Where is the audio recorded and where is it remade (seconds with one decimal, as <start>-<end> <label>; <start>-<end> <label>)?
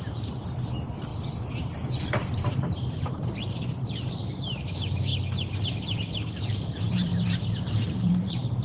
0.0-1.1 remade; 1.1-2.3 recorded; 2.3-5.1 remade; 5.1-5.7 recorded; 5.7-8.6 remade